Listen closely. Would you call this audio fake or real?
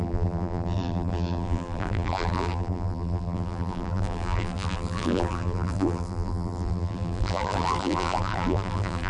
fake